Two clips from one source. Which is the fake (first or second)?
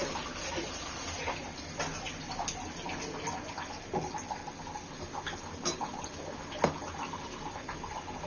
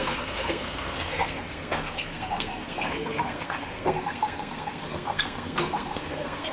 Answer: second